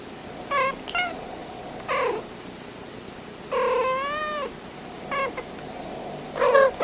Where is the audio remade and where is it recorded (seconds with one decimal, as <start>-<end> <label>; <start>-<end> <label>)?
0.0-6.8 recorded